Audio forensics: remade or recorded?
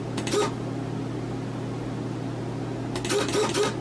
recorded